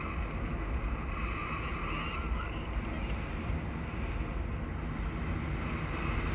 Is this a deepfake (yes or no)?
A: no